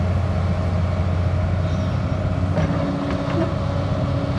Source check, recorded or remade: recorded